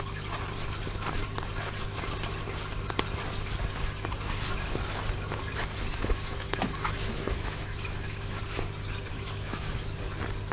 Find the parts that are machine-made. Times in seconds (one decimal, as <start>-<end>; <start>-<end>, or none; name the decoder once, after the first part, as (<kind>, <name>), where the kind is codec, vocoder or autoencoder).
5.9-8.4 (autoencoder, DAC-VAE); 9.1-9.7